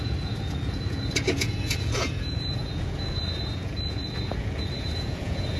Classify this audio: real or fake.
fake